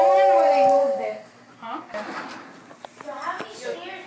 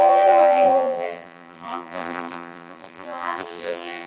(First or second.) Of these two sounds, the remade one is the second